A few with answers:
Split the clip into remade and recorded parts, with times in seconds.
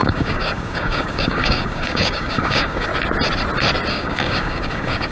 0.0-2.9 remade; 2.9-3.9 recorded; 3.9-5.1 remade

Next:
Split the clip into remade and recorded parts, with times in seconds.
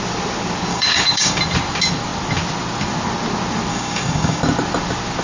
0.0-0.7 recorded; 0.7-1.4 remade; 1.4-3.7 recorded; 3.7-4.4 remade; 4.4-5.2 recorded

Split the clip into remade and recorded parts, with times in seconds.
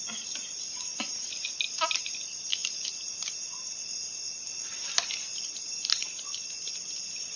0.0-7.4 recorded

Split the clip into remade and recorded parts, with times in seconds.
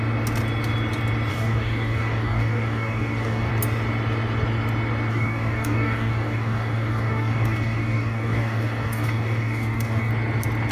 0.0-1.3 recorded; 1.3-3.5 remade; 3.5-5.1 recorded; 5.1-10.1 remade; 10.1-10.7 recorded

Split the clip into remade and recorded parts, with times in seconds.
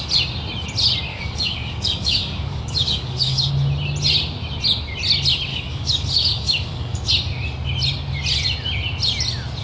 0.0-1.1 recorded; 1.1-3.5 remade; 3.5-5.5 recorded; 5.5-7.1 remade; 7.1-9.6 recorded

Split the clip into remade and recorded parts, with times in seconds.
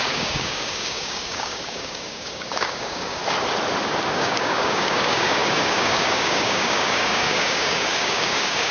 0.0-3.2 remade; 3.2-4.1 recorded; 4.1-8.7 remade